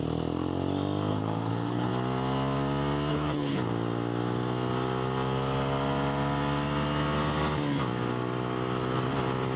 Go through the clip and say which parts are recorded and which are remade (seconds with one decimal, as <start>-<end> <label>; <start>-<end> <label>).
0.0-1.1 recorded; 1.1-1.9 remade; 1.9-3.1 recorded; 3.1-3.7 remade; 3.7-9.6 recorded